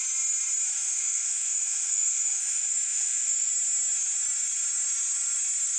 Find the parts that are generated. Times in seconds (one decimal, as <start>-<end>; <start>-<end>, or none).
0.8-3.5